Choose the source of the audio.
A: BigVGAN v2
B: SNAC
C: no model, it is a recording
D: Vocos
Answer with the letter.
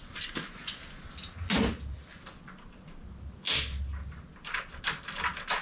C